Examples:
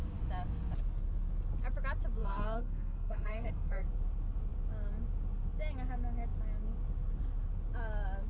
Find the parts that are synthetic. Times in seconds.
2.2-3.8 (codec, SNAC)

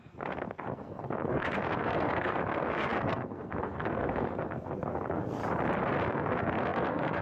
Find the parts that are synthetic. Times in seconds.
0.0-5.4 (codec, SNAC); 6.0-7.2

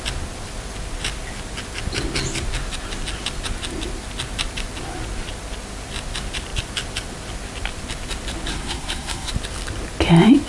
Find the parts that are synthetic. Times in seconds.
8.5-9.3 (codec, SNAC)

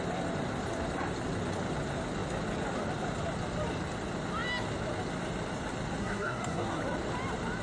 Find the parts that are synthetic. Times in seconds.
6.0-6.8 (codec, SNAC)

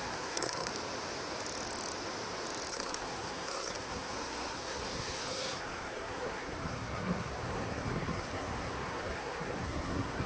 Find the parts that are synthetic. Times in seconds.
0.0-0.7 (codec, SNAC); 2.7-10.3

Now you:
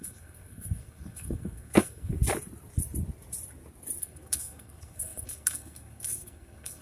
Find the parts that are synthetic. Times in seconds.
0.0-2.1 (codec, SNAC); 4.0-6.8

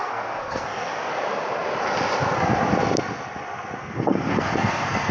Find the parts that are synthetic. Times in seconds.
0.0-0.9 (codec, SNAC); 3.8-5.1

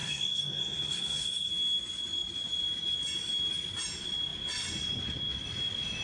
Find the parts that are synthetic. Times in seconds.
0.0-1.5 (codec, SNAC)